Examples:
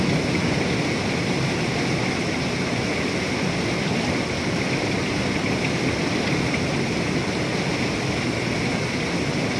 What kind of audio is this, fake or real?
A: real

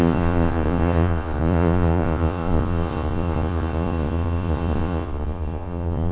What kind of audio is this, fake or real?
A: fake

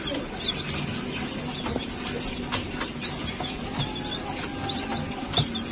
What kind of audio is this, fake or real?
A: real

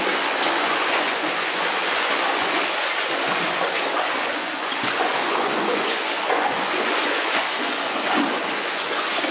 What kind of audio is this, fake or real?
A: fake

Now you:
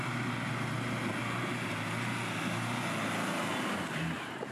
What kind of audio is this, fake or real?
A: real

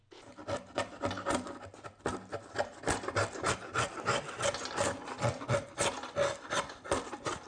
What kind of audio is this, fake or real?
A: real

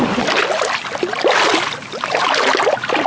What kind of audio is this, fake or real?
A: real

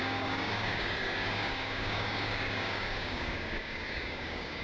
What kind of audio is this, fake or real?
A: fake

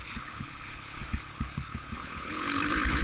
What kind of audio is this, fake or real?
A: fake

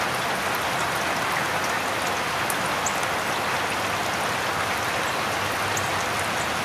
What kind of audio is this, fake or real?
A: real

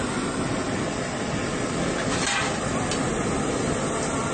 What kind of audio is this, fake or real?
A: real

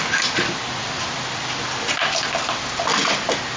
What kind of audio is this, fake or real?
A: fake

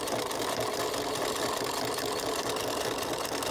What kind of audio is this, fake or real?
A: real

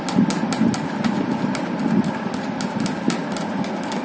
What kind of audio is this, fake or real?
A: real